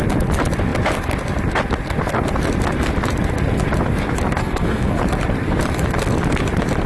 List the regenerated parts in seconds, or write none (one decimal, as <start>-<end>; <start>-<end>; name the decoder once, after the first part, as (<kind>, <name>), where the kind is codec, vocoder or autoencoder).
4.4-5.0 (codec, SNAC)